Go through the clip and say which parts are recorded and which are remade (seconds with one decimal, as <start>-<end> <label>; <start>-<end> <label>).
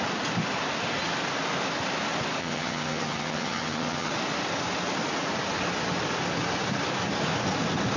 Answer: 0.0-2.4 recorded; 2.4-4.1 remade; 4.1-8.0 recorded